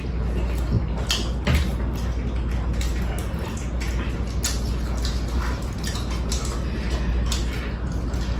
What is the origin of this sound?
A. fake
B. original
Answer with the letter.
B